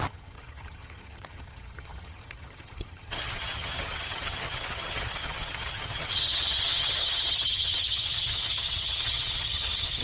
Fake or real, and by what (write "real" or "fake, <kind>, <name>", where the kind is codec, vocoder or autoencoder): fake, vocoder, HiFi-GAN